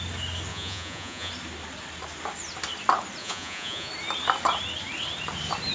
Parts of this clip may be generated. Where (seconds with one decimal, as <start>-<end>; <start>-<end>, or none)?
0.5-1.3; 3.2-3.9